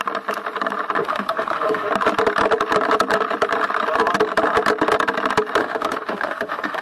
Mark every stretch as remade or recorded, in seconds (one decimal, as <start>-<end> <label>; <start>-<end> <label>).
0.0-1.0 recorded; 1.0-1.9 remade; 1.9-5.6 recorded; 5.6-6.8 remade